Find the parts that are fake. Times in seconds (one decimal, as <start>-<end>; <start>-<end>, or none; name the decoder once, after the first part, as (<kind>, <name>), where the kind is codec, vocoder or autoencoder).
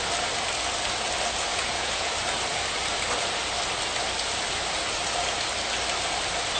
1.5-2.1 (vocoder, Vocos)